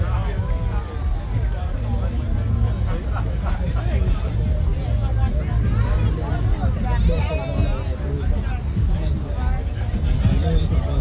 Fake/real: real